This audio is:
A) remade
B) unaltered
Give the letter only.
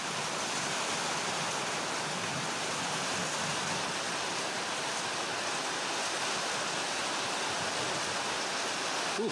B